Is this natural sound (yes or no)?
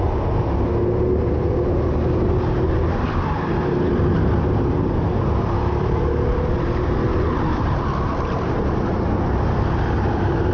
yes